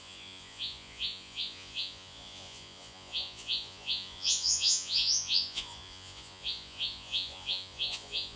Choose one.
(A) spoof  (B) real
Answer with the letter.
A